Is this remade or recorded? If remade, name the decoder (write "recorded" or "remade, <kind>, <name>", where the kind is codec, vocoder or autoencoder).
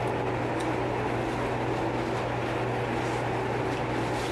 recorded